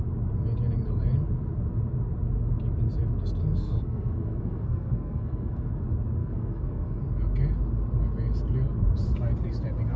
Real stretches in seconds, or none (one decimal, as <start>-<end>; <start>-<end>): 0.0-3.4; 5.8-6.2; 7.0-10.0